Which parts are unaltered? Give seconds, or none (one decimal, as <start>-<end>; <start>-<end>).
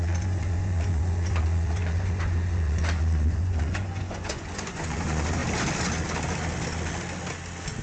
5.4-7.8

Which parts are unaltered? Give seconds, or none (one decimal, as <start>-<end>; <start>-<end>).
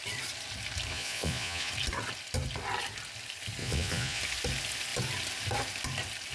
0.0-0.9; 1.7-3.6; 4.2-6.3